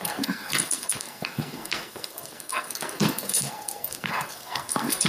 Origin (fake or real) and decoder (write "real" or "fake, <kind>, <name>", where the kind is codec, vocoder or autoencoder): fake, codec, SNAC